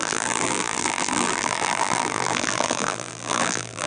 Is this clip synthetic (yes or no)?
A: yes